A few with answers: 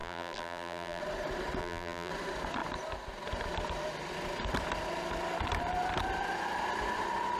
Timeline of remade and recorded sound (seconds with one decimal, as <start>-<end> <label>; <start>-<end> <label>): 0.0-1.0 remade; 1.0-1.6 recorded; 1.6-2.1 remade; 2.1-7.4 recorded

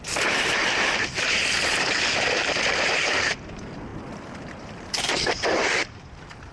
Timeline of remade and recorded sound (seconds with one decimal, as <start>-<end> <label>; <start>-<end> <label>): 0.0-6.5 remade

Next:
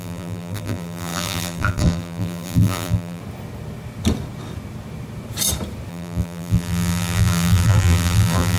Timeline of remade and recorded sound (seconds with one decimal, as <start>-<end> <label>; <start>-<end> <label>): 0.0-3.2 remade; 3.2-5.9 recorded; 5.9-8.6 remade